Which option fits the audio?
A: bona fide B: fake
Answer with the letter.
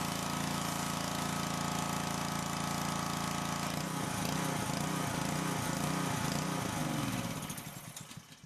A